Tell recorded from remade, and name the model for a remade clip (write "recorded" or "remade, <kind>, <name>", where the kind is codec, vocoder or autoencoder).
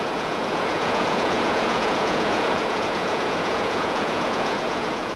remade, vocoder, Vocos